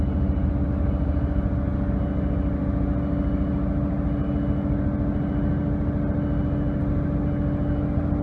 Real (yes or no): yes